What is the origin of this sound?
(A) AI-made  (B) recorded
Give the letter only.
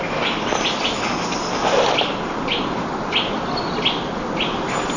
B